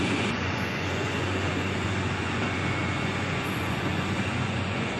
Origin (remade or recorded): remade